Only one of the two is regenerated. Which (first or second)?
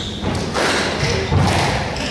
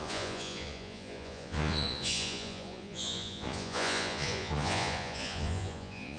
second